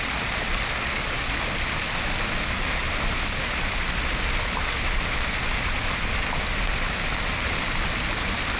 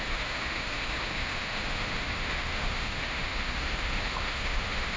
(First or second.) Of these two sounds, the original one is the first